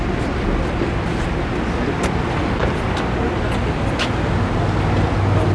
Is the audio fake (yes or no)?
no